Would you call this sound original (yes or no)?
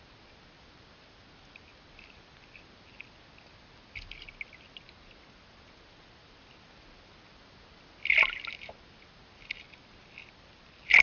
yes